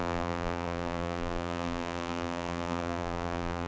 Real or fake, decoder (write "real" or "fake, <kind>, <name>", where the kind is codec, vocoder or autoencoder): fake, vocoder, BigVGAN v2